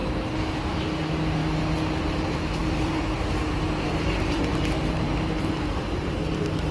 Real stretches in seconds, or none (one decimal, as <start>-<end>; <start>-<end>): 0.0-0.7; 1.4-2.0